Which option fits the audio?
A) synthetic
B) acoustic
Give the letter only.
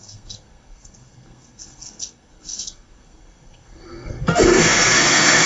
A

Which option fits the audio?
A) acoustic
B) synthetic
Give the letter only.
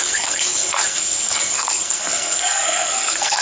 B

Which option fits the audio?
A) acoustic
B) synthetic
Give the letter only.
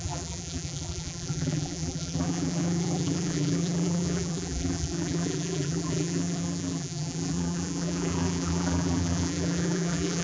B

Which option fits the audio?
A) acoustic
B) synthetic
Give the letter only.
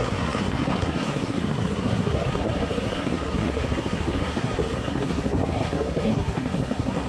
B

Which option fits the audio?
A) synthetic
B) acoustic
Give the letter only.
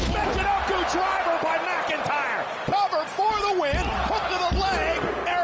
B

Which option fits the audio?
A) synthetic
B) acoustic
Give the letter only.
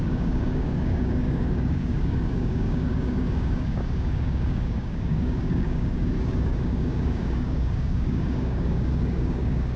A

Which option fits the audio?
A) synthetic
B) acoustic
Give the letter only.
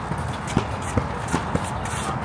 B